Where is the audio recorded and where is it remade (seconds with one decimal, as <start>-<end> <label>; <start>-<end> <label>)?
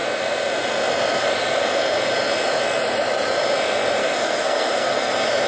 0.0-4.0 recorded; 4.0-5.1 remade; 5.1-5.5 recorded